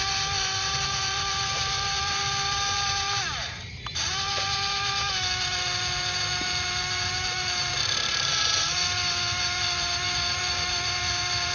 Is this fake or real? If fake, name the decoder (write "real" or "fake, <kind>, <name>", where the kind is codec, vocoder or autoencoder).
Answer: fake, vocoder, BigVGAN v2